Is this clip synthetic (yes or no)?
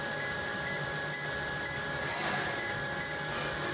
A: no